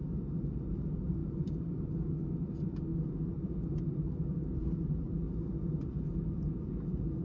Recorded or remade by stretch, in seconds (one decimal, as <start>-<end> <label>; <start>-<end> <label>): 0.0-7.2 remade